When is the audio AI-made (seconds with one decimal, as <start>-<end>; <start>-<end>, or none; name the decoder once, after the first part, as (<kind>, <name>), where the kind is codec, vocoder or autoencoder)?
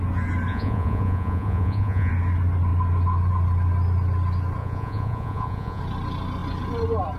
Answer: 0.5-2.1 (vocoder, Vocos); 4.6-5.8